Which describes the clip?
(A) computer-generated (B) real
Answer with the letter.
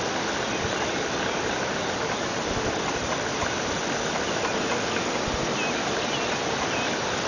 B